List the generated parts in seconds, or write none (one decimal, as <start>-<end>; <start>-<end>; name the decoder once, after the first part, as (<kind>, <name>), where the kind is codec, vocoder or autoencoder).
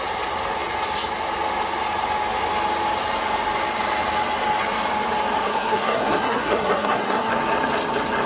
5.4-7.3 (codec, SNAC)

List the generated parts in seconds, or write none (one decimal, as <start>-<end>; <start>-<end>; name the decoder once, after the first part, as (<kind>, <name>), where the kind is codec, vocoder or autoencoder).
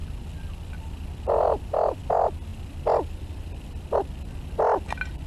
0.0-2.1 (vocoder, BigVGAN v2)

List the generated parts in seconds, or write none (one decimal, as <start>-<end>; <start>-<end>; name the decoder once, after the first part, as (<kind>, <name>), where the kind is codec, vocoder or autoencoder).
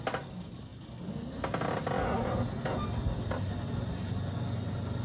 none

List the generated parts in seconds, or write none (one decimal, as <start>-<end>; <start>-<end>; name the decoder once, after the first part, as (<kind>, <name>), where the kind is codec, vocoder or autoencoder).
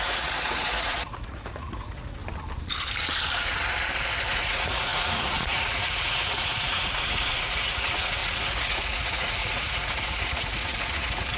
0.0-2.2 (vocoder, Vocos); 4.3-11.4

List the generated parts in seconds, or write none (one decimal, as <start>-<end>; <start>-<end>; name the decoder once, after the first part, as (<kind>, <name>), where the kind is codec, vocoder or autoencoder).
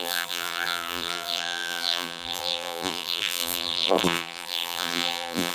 0.0-5.5 (vocoder, BigVGAN v2)